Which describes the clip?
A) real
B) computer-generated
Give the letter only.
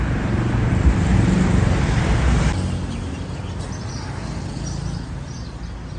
A